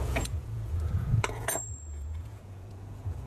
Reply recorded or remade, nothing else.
remade